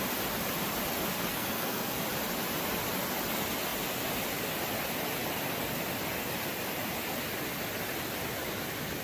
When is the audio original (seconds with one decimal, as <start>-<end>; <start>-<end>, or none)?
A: 0.0-1.3; 2.0-9.0